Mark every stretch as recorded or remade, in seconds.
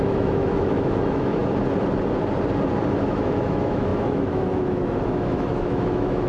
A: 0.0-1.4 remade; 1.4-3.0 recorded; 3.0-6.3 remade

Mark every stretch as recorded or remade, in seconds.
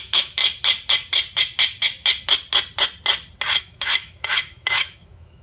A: 0.0-0.4 remade; 0.4-3.6 recorded; 3.6-5.4 remade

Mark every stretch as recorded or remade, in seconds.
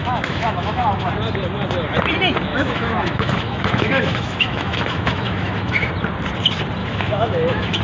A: 0.0-1.1 remade; 1.1-2.5 recorded; 2.5-5.9 remade; 5.9-6.8 recorded; 6.8-7.8 remade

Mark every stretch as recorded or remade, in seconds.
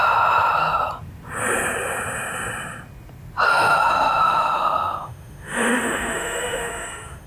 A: 0.0-3.5 recorded; 3.5-7.3 remade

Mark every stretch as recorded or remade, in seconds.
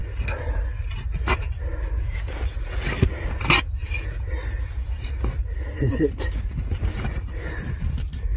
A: 0.0-8.4 recorded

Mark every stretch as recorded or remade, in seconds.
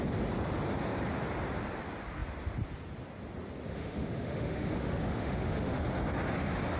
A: 0.0-3.7 recorded; 3.7-5.8 remade; 5.8-6.8 recorded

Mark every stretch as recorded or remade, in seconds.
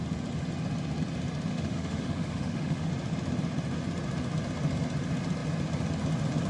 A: 0.0-1.5 recorded; 1.5-2.9 remade; 2.9-6.5 recorded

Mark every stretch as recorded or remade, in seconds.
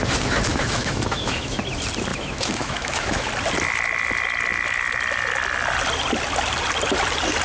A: 0.0-0.5 recorded; 0.5-1.6 remade; 1.6-2.1 recorded; 2.1-3.3 remade; 3.3-7.4 recorded